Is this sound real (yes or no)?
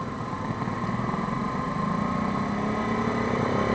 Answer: yes